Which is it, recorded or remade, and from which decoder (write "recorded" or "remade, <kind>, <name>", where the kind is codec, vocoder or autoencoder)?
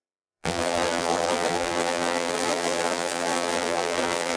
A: remade, vocoder, BigVGAN v2